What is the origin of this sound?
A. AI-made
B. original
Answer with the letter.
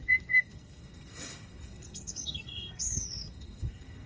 A